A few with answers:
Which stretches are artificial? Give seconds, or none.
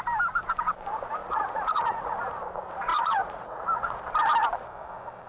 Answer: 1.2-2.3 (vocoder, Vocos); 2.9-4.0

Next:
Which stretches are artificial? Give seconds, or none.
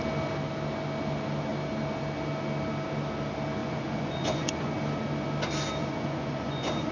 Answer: 3.6-4.7 (vocoder, Vocos); 5.8-6.9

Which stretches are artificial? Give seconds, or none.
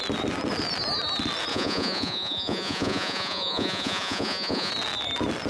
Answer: 1.5-4.7 (vocoder, Vocos)